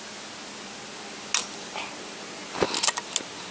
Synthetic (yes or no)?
no